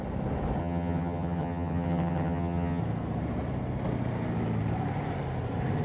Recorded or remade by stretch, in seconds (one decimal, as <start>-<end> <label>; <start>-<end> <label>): 0.0-0.6 recorded; 0.6-2.8 remade; 2.8-5.8 recorded